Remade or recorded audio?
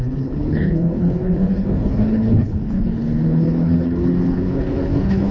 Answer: remade